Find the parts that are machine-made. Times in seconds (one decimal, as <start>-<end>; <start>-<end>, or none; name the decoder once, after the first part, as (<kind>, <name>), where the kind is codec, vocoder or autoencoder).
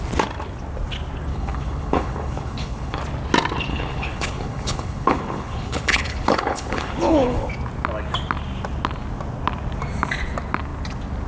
1.3-3.0 (codec, HILCodec); 3.7-7.5